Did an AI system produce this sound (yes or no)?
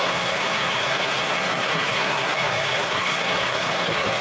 yes